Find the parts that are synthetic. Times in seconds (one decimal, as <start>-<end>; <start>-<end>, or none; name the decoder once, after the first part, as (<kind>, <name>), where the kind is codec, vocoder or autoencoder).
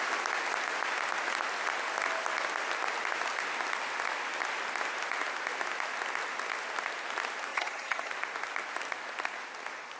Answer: 7.5-8.1 (vocoder, HiFi-GAN)